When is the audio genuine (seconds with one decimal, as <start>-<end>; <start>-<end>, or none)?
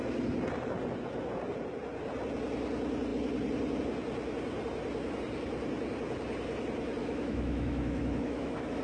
0.0-7.0